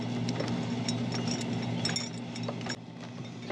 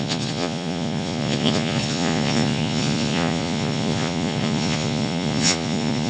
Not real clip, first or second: second